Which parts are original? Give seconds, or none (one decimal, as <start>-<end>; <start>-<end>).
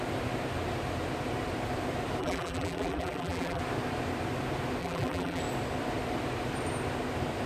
0.0-2.2; 3.6-4.8; 5.4-7.5